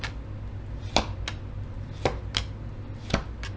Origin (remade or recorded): recorded